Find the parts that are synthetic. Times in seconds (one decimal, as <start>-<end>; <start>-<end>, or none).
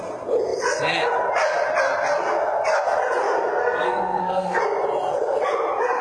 3.6-4.6